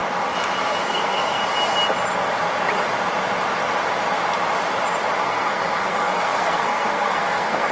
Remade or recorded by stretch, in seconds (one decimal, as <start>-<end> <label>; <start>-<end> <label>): 0.0-0.8 recorded; 0.8-1.4 remade; 1.4-5.2 recorded; 5.2-7.7 remade